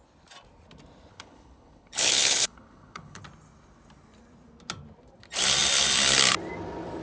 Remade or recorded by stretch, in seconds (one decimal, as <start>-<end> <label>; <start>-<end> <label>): 0.0-1.1 recorded; 1.1-3.2 remade; 3.2-7.0 recorded